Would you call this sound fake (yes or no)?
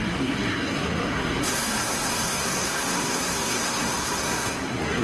yes